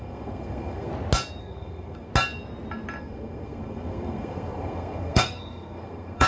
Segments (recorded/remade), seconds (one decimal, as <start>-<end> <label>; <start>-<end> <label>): 0.0-0.9 remade; 0.9-1.4 recorded; 1.4-2.1 remade; 2.1-3.0 recorded; 3.0-6.3 remade